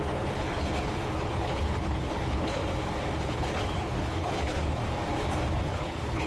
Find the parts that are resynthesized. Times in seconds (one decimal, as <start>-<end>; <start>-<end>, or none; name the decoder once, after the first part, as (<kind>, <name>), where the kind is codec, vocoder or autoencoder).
0.0-2.6 (codec, HILCodec); 3.2-4.8; 5.7-6.3